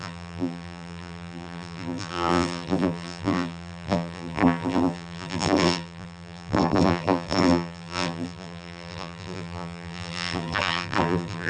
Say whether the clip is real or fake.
fake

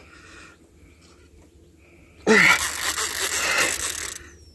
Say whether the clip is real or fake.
real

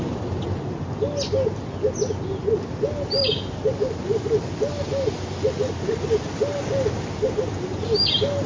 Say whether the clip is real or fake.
real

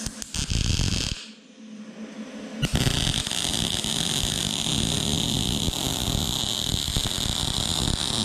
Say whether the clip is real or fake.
real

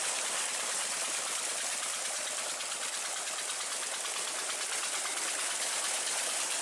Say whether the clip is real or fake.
real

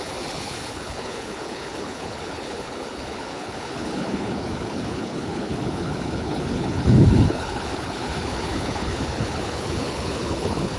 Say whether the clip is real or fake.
fake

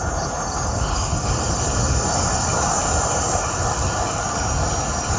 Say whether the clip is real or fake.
real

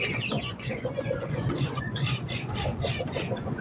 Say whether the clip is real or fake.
fake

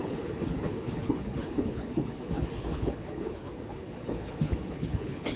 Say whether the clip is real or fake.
fake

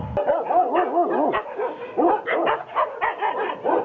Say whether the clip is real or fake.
real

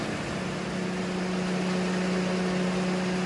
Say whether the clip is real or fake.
real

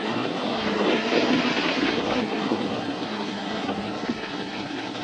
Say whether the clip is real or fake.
fake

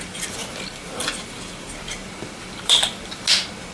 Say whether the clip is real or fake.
real